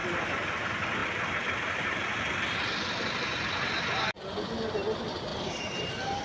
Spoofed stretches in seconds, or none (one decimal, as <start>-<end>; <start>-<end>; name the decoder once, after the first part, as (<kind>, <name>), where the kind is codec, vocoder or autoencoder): 5.3-6.2 (vocoder, BigVGAN v2)